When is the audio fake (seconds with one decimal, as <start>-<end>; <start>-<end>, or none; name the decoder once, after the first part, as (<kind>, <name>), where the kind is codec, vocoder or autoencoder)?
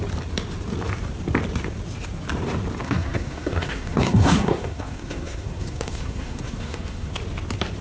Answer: 2.8-7.1 (codec, SNAC)